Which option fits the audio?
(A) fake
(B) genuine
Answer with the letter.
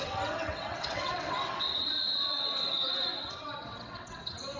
A